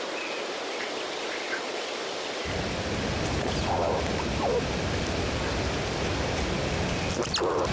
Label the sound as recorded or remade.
recorded